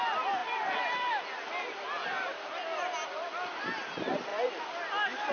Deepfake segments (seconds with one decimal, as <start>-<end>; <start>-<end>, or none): none